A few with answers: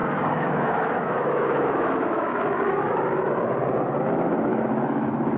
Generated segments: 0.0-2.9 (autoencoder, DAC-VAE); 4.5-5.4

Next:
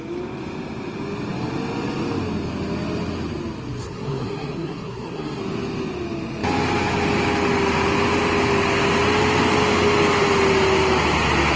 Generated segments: 3.8-5.4 (codec, SNAC)

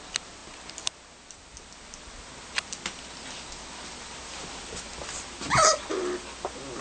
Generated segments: none

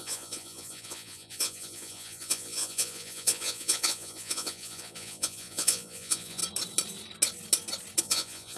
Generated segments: 0.0-6.4 (vocoder, Vocos); 8.0-8.6